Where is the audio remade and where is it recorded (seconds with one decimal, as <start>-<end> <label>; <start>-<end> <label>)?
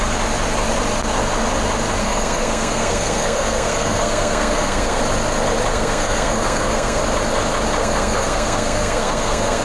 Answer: 0.0-2.0 recorded; 2.0-5.0 remade; 5.0-5.7 recorded; 5.7-7.0 remade; 7.0-7.8 recorded; 7.8-9.6 remade